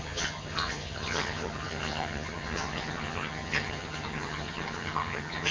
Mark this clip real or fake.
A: fake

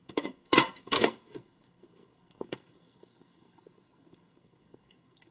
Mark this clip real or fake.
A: fake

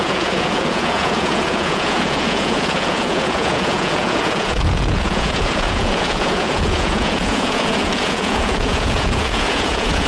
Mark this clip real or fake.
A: fake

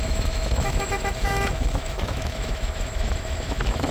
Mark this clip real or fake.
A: fake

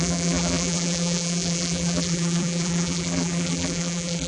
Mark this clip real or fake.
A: fake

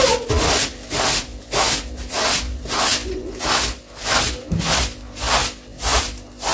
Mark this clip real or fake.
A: real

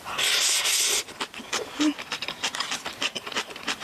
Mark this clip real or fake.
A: real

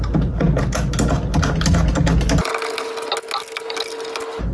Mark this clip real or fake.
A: real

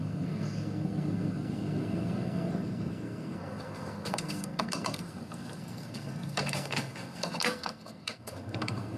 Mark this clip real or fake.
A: fake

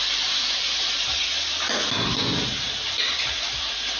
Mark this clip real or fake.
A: real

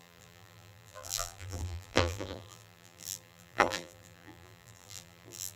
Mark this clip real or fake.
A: fake